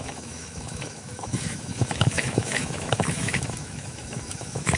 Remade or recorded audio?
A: remade